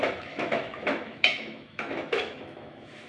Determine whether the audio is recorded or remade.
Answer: remade